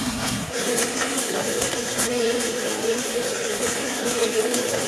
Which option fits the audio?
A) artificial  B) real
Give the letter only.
A